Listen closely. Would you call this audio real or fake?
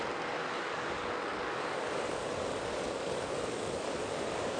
fake